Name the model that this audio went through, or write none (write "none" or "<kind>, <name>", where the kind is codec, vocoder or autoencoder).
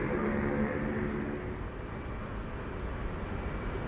none